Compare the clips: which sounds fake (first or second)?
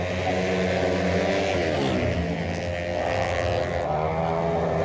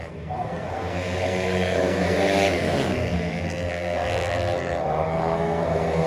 second